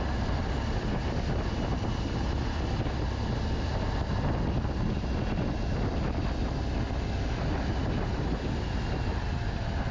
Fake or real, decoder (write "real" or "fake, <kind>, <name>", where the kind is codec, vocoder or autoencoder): real